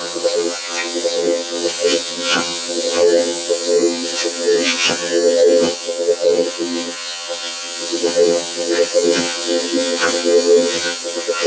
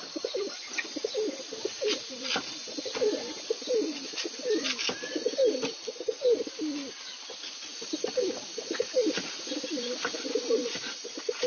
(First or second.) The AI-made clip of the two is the first